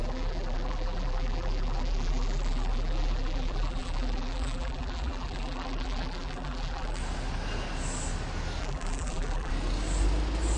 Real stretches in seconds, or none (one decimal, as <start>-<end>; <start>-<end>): 7.0-8.6; 9.5-10.6